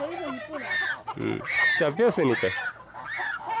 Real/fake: real